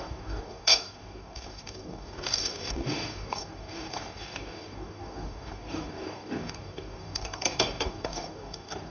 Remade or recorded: remade